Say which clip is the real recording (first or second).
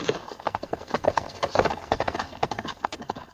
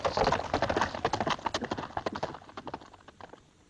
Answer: second